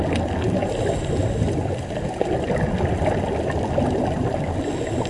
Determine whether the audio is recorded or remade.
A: recorded